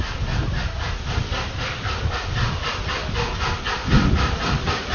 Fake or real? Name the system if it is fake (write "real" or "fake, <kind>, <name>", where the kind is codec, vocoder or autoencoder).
fake, vocoder, BigVGAN v2